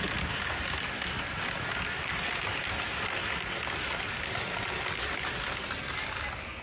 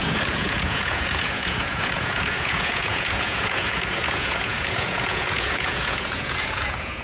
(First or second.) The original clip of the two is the first